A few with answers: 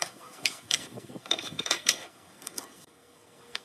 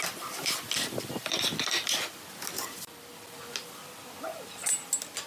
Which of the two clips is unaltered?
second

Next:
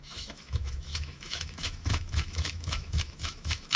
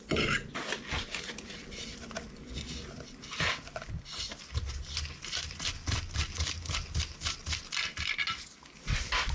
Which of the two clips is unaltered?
second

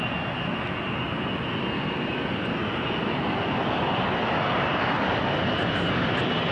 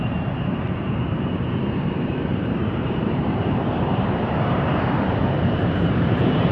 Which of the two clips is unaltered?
first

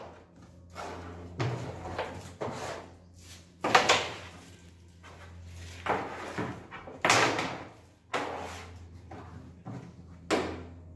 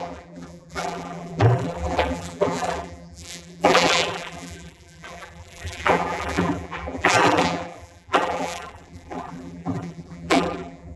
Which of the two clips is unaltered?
first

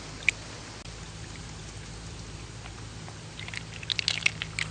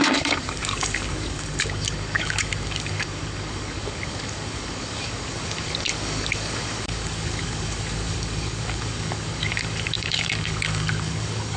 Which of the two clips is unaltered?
first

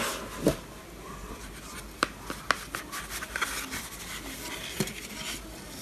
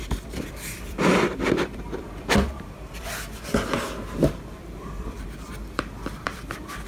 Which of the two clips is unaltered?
first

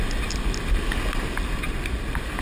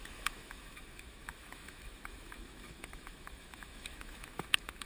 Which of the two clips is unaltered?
first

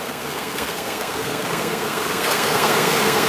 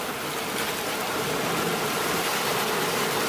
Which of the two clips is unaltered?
second